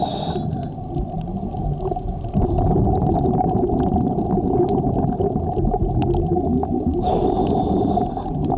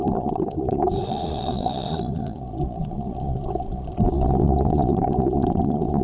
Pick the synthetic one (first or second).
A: second